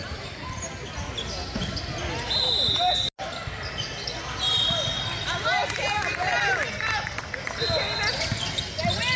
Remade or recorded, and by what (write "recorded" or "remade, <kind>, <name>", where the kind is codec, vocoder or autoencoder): recorded